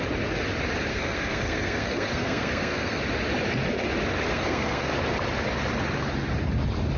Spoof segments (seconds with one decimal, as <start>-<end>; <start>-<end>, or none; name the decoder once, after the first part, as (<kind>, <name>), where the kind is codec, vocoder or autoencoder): 0.9-3.0 (codec, SNAC); 4.3-4.9